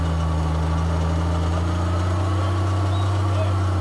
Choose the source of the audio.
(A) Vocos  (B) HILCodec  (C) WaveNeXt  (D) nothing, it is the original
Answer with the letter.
D